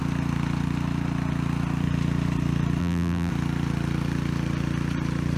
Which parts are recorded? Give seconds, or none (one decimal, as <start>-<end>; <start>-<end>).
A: 0.0-2.8; 3.3-5.4